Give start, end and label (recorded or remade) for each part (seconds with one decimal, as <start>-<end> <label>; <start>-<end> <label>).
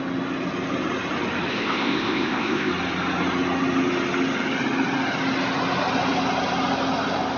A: 0.0-1.5 recorded; 1.5-2.7 remade; 2.7-7.4 recorded